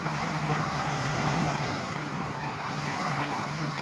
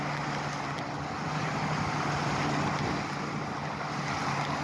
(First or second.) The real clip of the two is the second